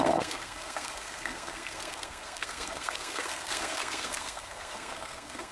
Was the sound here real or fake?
fake